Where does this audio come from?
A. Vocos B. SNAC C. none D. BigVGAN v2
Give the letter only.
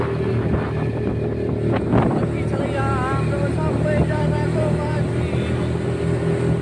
C